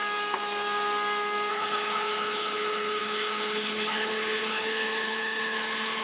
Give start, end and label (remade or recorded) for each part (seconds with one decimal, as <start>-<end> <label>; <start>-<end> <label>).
0.0-1.5 recorded; 1.5-6.0 remade